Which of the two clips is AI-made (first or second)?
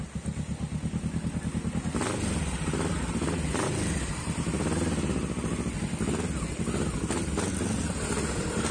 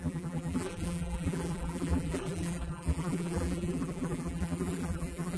second